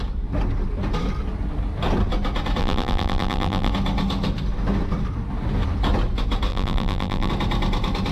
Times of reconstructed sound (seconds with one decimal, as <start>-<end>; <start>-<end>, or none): 2.6-3.7; 6.5-7.3